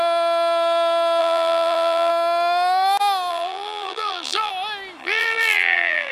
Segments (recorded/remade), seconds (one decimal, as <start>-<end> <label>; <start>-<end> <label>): 0.0-1.2 recorded; 1.2-2.1 remade; 2.1-3.3 recorded; 3.3-4.5 remade; 4.5-5.0 recorded; 5.0-6.1 remade